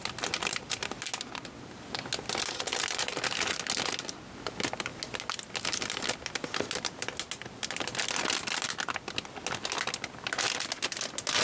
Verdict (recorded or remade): recorded